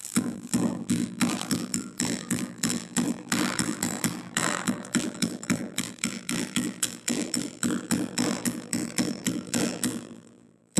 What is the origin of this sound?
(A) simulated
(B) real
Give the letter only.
A